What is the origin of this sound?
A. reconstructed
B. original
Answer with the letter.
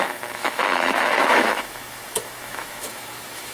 A